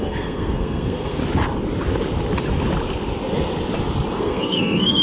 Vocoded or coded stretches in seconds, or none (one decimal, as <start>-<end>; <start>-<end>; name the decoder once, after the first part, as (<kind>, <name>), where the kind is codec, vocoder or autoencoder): 0.0-1.2 (codec, SNAC); 4.2-5.0